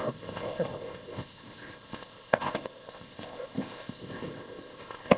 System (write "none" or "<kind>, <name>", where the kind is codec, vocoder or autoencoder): codec, ZipCodec